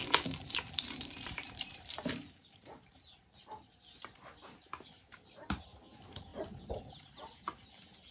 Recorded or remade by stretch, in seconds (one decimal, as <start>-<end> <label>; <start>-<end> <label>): 0.0-8.1 remade